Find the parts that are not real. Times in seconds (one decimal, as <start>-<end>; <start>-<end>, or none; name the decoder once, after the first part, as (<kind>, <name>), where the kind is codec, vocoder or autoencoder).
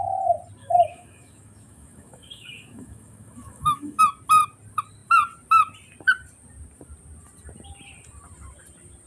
0.6-4.0 (autoencoder, DAC-VAE)